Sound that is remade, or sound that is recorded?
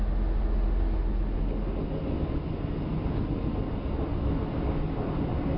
recorded